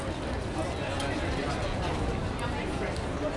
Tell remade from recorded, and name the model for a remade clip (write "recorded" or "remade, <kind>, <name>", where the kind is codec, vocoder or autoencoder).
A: recorded